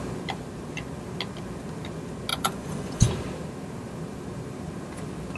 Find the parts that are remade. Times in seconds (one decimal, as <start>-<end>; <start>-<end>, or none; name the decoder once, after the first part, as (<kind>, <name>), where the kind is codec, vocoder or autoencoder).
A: 2.3-3.1 (vocoder, Vocos)